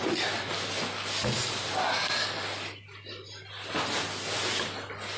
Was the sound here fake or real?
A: real